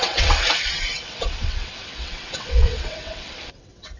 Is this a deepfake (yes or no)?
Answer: yes